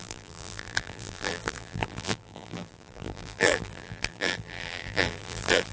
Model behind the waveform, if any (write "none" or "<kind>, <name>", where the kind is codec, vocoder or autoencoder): vocoder, BigVGAN v2